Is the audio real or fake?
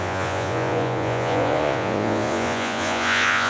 fake